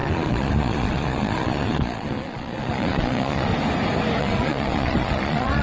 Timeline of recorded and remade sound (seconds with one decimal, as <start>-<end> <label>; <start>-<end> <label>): 0.0-3.5 remade; 3.5-4.2 recorded; 4.2-5.6 remade